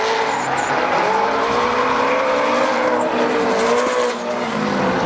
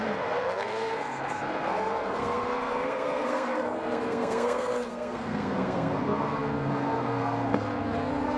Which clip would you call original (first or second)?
first